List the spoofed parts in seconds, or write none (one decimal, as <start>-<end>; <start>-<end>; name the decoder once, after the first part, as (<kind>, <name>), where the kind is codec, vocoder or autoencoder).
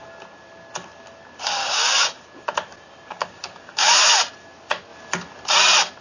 1.6-2.2 (codec, DAC); 3.1-3.9